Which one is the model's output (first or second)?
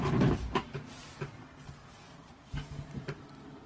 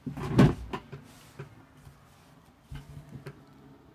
first